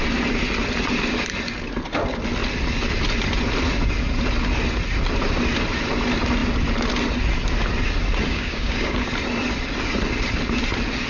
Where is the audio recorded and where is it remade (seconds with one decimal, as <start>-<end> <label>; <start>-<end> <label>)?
0.0-8.3 recorded; 8.3-9.1 remade; 9.1-11.1 recorded

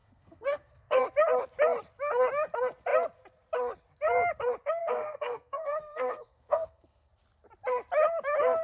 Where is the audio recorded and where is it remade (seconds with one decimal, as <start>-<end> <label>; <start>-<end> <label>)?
0.0-1.0 remade; 1.0-4.8 recorded; 4.8-7.1 remade; 7.1-8.6 recorded

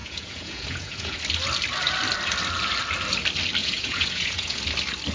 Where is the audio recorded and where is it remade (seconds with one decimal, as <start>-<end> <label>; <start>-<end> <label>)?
0.0-1.2 remade; 1.2-3.6 recorded; 3.6-4.6 remade; 4.6-5.1 recorded

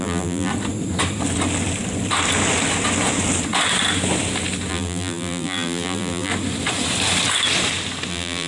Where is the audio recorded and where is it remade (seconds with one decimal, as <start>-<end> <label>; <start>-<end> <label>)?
0.0-0.5 remade; 0.5-4.7 recorded; 4.7-6.3 remade; 6.3-8.1 recorded; 8.1-8.5 remade

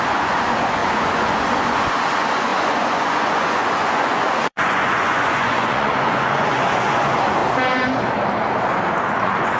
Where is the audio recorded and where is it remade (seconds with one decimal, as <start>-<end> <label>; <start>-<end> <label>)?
0.0-7.4 remade; 7.4-9.2 recorded; 9.2-9.6 remade

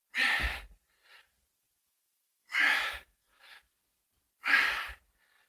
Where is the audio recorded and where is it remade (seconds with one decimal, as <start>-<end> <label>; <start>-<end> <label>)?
0.0-1.8 recorded; 1.8-3.4 remade; 3.4-5.5 recorded

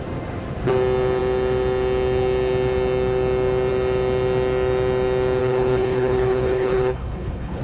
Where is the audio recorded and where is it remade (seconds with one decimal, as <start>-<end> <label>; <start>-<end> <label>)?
0.0-5.4 recorded; 5.4-7.6 remade

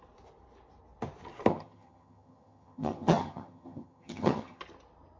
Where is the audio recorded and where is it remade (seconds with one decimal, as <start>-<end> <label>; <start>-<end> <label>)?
0.0-1.5 recorded; 1.5-4.6 remade; 4.6-5.2 recorded